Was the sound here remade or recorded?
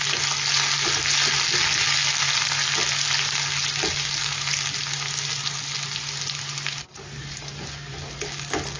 recorded